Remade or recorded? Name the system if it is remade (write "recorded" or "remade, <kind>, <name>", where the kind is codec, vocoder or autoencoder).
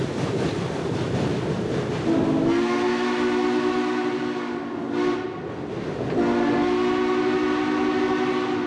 recorded